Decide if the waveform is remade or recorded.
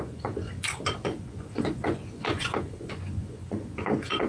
remade